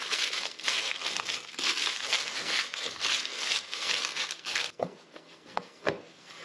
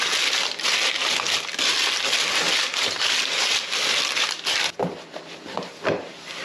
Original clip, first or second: second